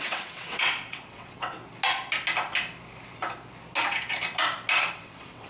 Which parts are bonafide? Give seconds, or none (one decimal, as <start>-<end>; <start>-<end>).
1.6-4.9